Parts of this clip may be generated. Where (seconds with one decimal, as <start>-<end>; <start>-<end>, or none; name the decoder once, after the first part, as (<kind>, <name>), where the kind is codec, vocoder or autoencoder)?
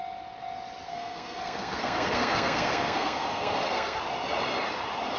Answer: 0.9-4.0 (codec, SNAC)